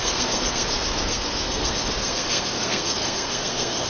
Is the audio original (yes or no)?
no